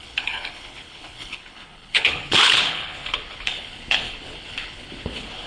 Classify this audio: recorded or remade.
remade